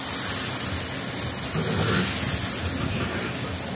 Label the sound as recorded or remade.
recorded